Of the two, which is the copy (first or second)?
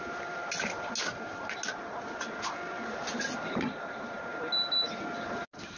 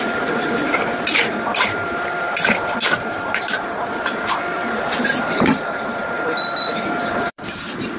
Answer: second